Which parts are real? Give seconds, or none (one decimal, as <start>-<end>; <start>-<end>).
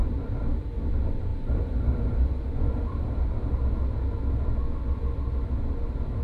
0.9-1.3; 3.2-6.2